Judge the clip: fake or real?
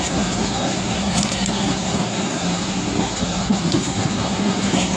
fake